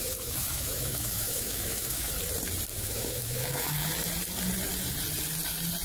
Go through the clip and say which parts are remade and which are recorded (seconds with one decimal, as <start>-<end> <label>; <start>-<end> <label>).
0.0-2.1 remade; 2.1-2.7 recorded; 2.7-3.9 remade; 3.9-5.8 recorded